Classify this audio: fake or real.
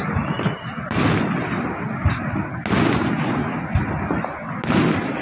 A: real